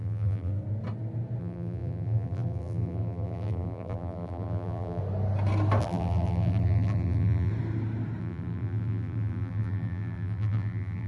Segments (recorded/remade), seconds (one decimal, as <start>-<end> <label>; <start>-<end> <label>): 0.0-0.5 remade; 0.5-1.4 recorded; 1.4-5.0 remade; 5.0-5.8 recorded; 5.8-7.5 remade; 7.5-8.2 recorded; 8.2-11.1 remade